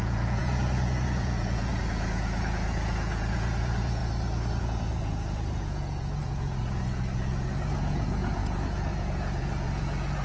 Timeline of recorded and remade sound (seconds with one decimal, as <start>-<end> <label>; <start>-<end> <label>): 0.0-4.0 remade; 4.0-4.6 recorded; 4.6-10.2 remade